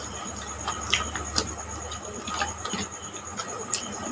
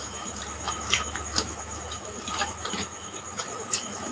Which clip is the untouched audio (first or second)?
first